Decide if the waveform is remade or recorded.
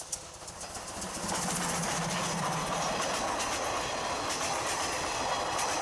recorded